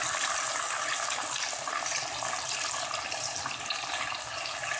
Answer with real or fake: real